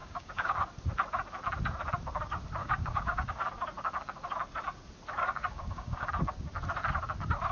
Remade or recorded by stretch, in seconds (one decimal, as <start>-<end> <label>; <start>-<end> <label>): 0.0-0.7 remade; 0.7-2.6 recorded; 2.6-3.5 remade; 3.5-5.2 recorded; 5.2-6.1 remade; 6.1-7.5 recorded